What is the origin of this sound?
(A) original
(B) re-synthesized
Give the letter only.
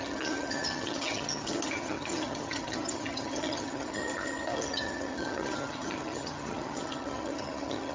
B